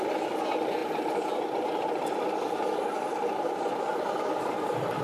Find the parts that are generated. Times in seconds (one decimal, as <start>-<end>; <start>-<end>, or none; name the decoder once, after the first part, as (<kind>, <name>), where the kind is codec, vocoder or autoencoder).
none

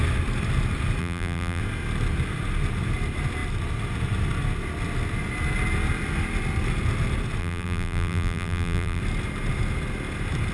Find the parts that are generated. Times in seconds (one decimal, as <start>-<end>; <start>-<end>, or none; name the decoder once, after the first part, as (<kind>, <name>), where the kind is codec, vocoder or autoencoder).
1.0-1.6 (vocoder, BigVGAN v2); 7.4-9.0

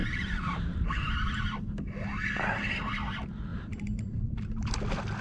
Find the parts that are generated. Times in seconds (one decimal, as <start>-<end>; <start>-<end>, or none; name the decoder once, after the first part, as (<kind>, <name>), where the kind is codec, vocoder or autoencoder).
0.0-1.7 (vocoder, BigVGAN v2); 3.5-4.7

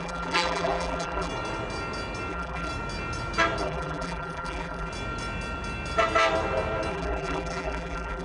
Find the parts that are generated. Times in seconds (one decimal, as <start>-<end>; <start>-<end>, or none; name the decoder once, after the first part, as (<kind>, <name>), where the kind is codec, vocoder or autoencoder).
0.0-1.3 (vocoder, BigVGAN v2); 2.3-2.7; 3.6-4.9; 6.9-8.2

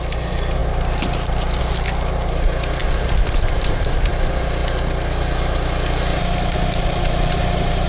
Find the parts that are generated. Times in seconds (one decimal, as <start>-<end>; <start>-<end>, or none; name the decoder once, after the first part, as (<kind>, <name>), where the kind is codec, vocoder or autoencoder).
2.8-4.1 (vocoder, BigVGAN v2); 6.1-7.9

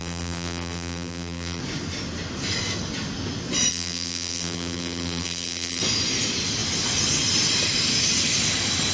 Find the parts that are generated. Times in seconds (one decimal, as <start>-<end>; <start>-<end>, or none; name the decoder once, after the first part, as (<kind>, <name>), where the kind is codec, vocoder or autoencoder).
0.0-1.6 (vocoder, BigVGAN v2); 3.7-5.8

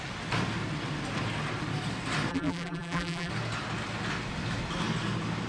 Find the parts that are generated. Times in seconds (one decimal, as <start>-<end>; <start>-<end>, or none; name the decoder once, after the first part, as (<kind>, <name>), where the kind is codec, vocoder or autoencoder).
2.3-3.3 (vocoder, BigVGAN v2)